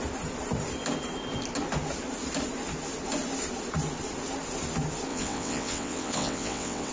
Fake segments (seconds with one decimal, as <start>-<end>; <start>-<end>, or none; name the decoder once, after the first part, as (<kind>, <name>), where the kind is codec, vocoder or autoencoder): 5.1-6.9 (vocoder, WaveNeXt)